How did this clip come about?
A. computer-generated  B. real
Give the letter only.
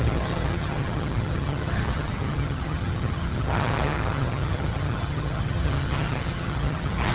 A